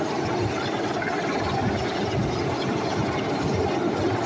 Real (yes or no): yes